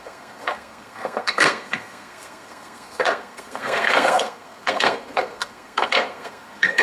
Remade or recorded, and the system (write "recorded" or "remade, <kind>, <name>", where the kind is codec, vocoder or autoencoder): remade, codec, SNAC